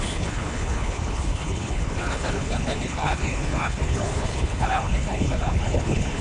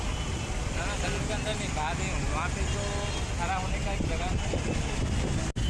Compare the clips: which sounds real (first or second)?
second